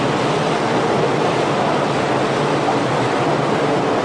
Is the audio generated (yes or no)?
yes